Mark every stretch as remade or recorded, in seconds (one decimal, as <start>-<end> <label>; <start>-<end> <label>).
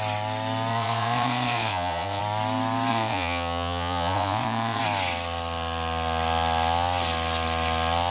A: 0.0-0.7 recorded; 0.7-2.2 remade; 2.2-2.9 recorded; 2.9-4.8 remade; 4.8-8.1 recorded